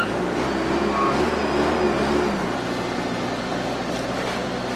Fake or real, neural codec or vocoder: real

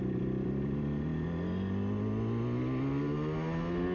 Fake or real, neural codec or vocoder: real